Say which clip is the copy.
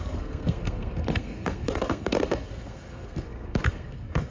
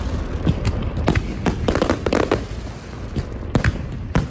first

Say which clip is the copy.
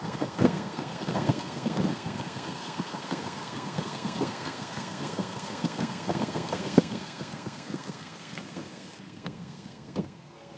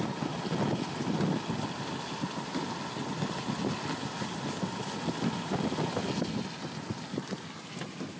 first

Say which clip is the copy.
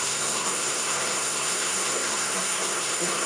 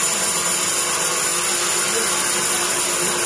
first